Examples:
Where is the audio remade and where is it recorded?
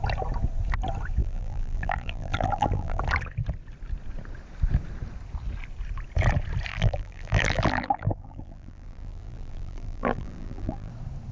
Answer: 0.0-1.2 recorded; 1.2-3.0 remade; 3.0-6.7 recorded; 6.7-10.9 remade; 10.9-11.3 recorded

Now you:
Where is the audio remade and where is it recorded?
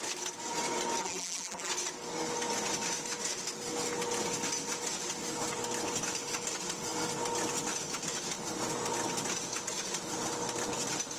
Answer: 0.0-1.0 recorded; 1.0-1.7 remade; 1.7-11.2 recorded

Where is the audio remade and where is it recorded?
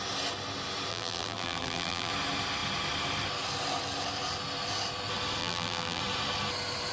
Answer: 0.0-0.9 recorded; 0.9-2.1 remade; 2.1-5.4 recorded; 5.4-6.0 remade; 6.0-6.9 recorded